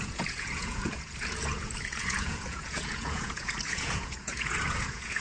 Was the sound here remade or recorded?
remade